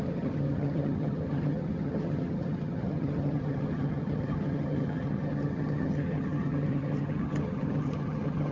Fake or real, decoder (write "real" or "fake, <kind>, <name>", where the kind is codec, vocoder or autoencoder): fake, vocoder, HiFi-GAN